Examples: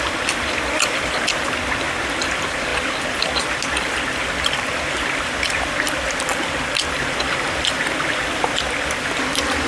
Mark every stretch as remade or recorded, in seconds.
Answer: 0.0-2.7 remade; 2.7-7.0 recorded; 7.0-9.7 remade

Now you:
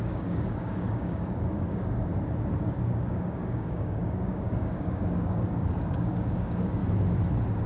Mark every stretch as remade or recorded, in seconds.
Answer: 0.0-2.1 remade; 2.1-2.6 recorded; 2.6-6.8 remade; 6.8-7.7 recorded

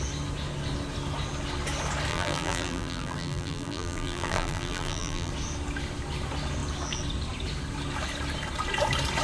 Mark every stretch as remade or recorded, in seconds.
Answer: 0.0-2.1 recorded; 2.1-5.3 remade; 5.3-9.2 recorded